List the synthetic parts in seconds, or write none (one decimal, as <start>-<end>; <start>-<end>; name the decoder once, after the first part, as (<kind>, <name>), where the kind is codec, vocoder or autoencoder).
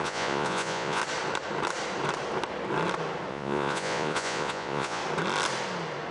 0.0-1.0 (vocoder, Vocos); 3.3-5.0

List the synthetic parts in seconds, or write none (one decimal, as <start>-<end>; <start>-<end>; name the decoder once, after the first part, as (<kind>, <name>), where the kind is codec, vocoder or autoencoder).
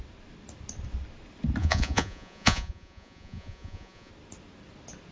1.6-4.1 (vocoder, Vocos)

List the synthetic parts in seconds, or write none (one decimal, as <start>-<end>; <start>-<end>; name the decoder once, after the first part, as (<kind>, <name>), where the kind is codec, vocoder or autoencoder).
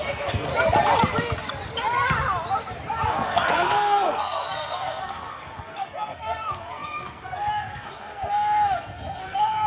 0.0-0.5 (codec, SNAC); 3.1-9.7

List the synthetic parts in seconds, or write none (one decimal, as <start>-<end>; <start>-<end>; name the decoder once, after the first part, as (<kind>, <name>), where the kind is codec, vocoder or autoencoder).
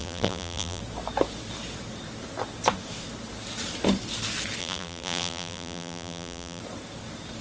0.0-0.8 (vocoder, BigVGAN v2); 4.6-6.6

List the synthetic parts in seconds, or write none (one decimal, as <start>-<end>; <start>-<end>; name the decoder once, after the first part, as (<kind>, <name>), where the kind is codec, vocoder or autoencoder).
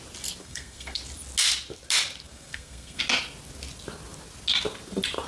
0.4-1.0 (codec, SNAC); 2.3-3.0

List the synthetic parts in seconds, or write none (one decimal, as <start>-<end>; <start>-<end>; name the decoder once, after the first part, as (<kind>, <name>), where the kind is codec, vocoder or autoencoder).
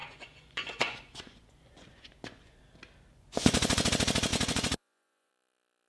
0.0-2.6 (vocoder, Vocos); 3.1-3.9; 4.3-5.3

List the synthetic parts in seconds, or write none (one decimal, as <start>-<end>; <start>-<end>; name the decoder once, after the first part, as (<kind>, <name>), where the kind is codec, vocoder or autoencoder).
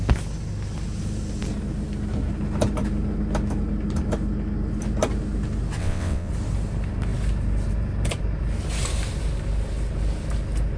5.8-6.3 (vocoder, WaveNeXt)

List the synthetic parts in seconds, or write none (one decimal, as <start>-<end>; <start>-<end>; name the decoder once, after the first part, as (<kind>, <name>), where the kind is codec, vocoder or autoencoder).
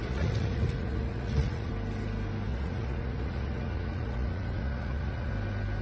0.0-1.7 (vocoder, Vocos); 2.5-5.3